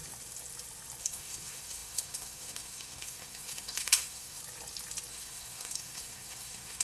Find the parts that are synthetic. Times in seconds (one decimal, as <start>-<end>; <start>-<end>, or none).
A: 1.0-4.4; 5.1-6.8